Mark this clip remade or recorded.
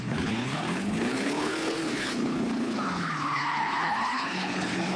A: remade